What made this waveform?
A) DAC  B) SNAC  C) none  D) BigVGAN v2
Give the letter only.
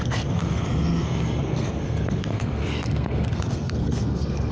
B